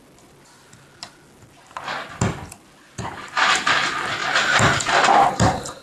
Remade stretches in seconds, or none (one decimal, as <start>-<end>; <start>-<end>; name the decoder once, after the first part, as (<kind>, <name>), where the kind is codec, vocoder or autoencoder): none